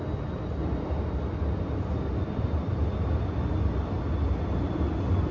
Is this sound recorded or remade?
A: recorded